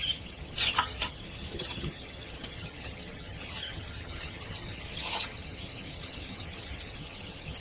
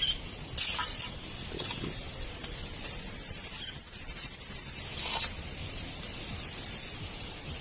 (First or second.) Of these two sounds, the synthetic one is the first